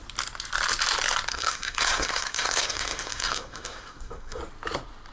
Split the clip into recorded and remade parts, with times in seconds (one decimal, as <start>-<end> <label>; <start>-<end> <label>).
0.0-1.3 recorded; 1.3-4.4 remade; 4.4-5.1 recorded

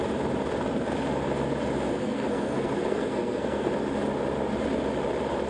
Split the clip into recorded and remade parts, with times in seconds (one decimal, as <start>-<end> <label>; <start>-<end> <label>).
0.0-1.9 recorded; 1.9-3.7 remade; 3.7-5.5 recorded